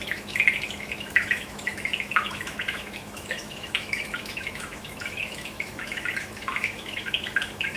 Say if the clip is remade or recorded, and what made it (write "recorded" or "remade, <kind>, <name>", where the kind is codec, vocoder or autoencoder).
remade, autoencoder, DAC-VAE